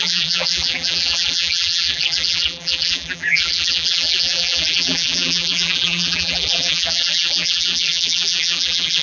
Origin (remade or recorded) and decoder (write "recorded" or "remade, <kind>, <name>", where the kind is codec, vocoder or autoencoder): remade, vocoder, BigVGAN v2